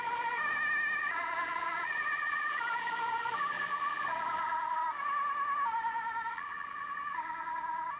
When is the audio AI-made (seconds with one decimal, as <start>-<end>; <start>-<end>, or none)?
0.0-0.4; 1.0-4.8; 6.3-8.0